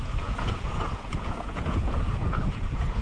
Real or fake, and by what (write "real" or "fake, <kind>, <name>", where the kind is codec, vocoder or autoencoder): fake, vocoder, Vocos